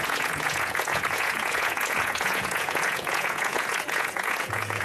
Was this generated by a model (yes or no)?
yes